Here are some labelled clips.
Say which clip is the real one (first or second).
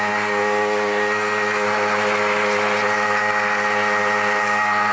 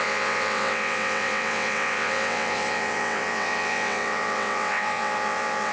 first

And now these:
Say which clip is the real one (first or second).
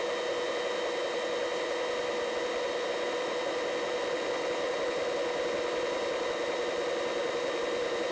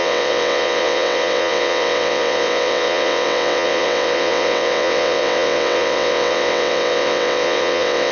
first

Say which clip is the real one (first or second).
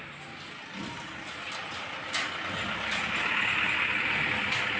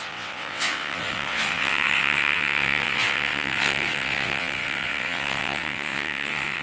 first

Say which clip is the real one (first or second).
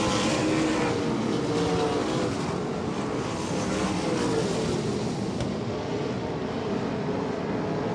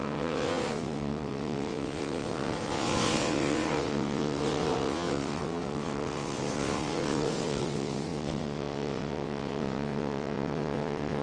first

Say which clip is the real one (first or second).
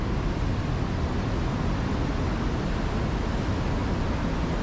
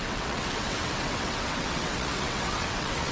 first